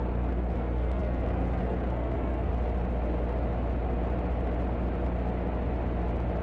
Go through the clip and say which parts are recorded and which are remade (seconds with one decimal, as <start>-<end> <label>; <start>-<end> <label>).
0.0-2.5 remade; 2.5-6.4 recorded